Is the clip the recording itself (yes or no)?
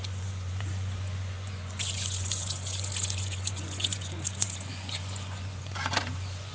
no